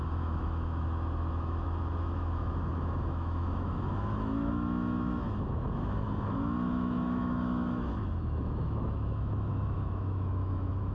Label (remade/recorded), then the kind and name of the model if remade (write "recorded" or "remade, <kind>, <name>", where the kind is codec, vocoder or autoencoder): remade, autoencoder, DAC-VAE